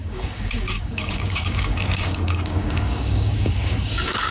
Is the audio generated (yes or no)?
yes